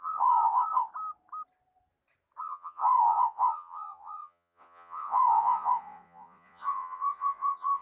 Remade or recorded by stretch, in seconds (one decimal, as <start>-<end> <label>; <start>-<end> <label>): 0.0-0.9 remade; 0.9-2.4 recorded; 2.4-7.8 remade